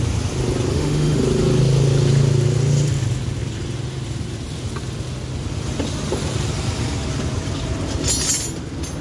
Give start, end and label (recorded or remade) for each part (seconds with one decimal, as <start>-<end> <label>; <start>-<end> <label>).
0.0-0.7 recorded; 0.7-1.2 remade; 1.2-9.0 recorded